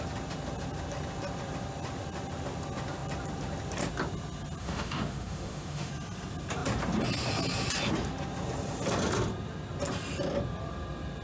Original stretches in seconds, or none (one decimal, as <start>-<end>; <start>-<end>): 0.0-4.6; 5.9-11.2

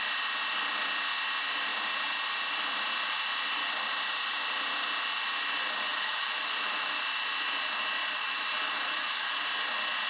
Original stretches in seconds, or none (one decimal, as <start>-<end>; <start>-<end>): 0.0-5.9; 7.0-8.2; 9.4-10.1